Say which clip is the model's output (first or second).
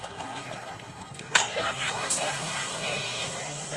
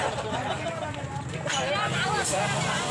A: first